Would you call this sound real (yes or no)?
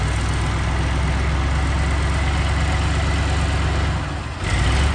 yes